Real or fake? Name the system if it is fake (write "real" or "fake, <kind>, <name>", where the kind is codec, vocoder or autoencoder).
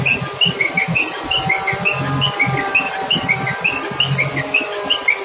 real